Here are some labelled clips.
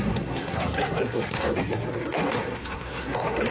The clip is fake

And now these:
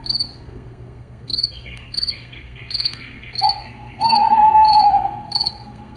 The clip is fake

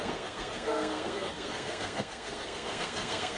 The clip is fake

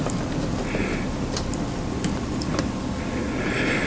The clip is real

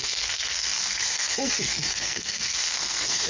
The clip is fake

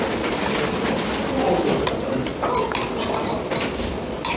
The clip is real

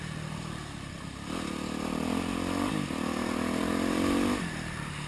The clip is real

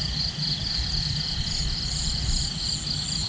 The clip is real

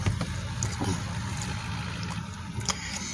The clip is real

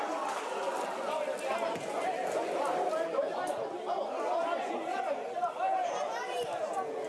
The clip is real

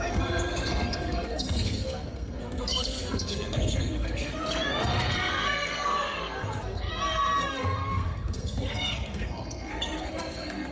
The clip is fake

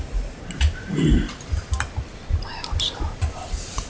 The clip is real